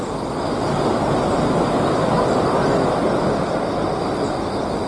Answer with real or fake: real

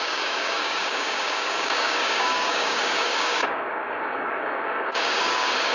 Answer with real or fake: fake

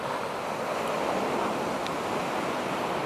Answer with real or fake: real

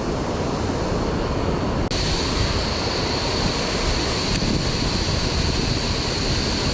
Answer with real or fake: real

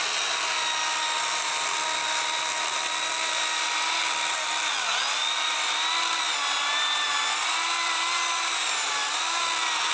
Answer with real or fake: real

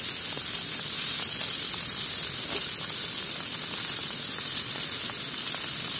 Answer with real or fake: real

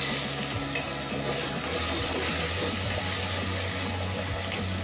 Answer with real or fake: real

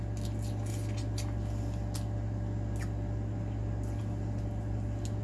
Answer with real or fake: real